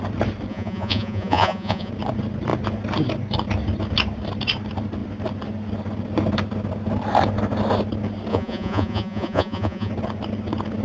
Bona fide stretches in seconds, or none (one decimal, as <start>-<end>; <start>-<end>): 0.0-0.5; 1.9-8.3; 9.9-10.8